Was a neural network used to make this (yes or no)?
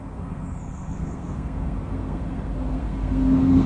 yes